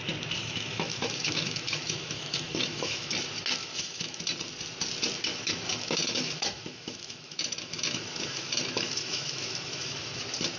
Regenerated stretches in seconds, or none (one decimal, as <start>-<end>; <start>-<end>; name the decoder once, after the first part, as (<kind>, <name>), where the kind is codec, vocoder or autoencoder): 0.4-3.1 (autoencoder, DAC-VAE); 3.6-4.2; 5.3-10.2